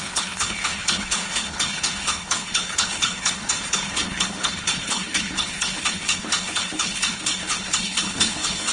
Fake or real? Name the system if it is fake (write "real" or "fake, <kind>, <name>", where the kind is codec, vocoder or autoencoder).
fake, codec, HILCodec